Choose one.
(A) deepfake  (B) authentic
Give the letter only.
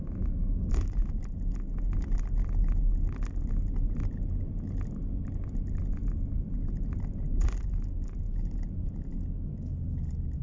B